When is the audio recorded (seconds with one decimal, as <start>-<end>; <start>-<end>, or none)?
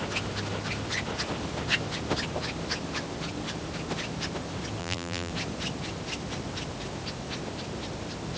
0.0-4.8; 5.3-8.4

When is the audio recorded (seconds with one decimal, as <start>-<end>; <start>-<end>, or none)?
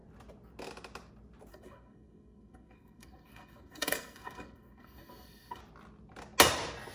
0.0-1.5; 5.6-6.9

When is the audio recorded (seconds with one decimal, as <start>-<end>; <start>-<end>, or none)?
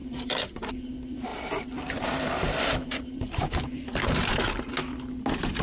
0.7-1.3; 4.7-5.6